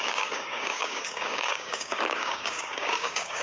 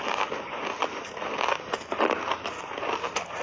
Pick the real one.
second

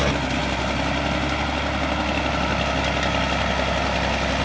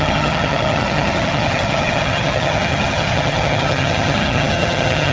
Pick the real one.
first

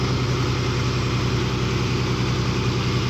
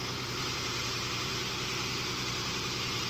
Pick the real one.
first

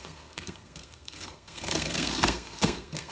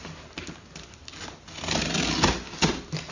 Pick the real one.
second